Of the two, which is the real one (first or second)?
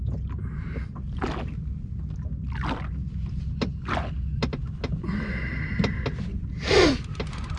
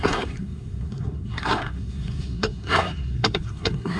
first